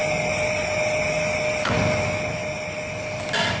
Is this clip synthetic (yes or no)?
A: no